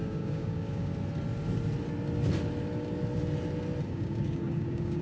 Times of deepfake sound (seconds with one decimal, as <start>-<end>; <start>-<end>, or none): 0.0-0.9; 3.9-5.0